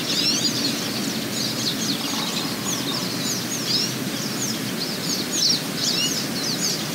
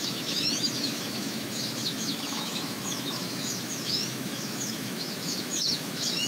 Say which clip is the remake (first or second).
second